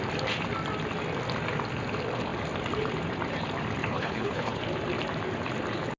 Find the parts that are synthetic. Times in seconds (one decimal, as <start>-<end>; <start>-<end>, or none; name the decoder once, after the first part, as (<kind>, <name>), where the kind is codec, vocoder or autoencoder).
3.8-4.6 (codec, HILCodec)